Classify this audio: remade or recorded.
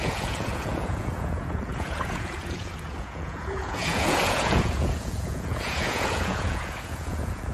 remade